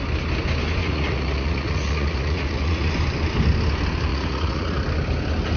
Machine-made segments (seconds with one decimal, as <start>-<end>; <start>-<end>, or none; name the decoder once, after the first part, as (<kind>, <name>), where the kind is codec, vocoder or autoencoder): 0.8-2.9 (vocoder, Vocos); 4.1-4.8